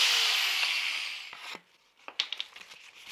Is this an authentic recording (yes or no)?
yes